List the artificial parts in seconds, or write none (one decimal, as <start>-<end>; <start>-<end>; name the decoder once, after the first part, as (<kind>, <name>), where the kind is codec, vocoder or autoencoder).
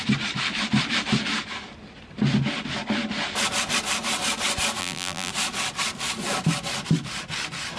4.8-5.3 (vocoder, BigVGAN v2)